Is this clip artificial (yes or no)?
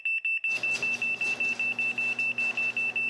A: no